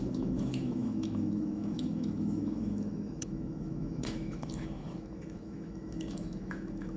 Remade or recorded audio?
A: remade